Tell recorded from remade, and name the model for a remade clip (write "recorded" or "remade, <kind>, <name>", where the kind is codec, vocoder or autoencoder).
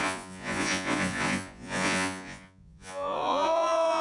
remade, vocoder, Vocos